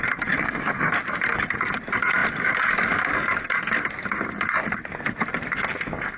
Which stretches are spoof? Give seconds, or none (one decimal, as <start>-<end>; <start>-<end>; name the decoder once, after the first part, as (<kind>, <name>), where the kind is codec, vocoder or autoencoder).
0.4-0.9 (codec, SNAC)